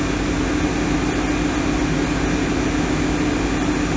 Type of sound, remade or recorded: recorded